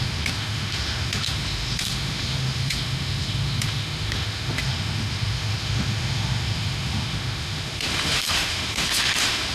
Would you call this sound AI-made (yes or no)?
yes